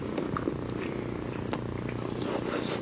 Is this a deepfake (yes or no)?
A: no